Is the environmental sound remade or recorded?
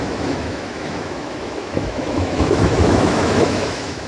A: remade